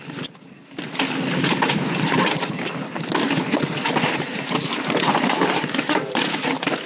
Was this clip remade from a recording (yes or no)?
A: no